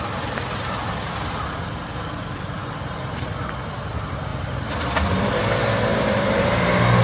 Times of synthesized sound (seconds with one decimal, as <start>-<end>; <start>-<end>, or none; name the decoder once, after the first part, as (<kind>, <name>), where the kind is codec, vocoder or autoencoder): 5.9-7.0 (vocoder, BigVGAN v2)